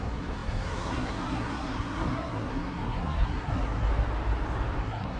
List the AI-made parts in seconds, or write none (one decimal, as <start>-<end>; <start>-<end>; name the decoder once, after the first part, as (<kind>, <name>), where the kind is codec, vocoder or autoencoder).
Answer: 0.0-3.9 (codec, SNAC); 4.8-5.2